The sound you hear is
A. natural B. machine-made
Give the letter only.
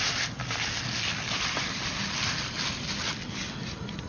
A